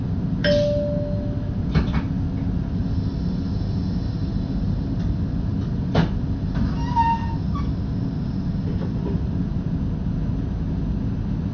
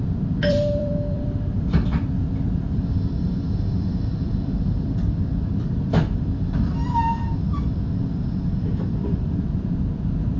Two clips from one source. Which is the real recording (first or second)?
first